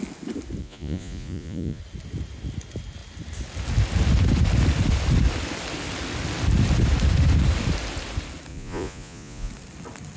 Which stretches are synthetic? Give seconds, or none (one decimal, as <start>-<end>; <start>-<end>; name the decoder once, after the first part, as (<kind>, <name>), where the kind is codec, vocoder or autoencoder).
0.6-1.8 (vocoder, Vocos); 8.5-9.5